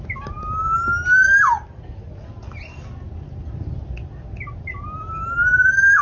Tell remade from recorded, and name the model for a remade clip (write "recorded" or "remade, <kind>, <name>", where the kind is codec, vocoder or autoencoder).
recorded